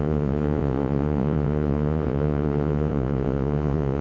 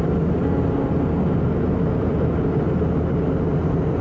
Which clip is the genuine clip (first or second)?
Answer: second